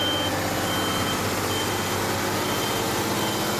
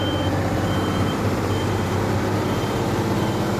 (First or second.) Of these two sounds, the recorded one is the first